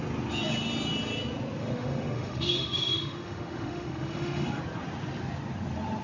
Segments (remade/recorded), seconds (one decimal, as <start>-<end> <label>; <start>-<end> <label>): 0.0-1.6 recorded; 1.6-4.6 remade; 4.6-6.0 recorded